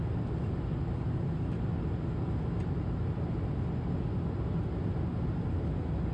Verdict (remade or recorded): recorded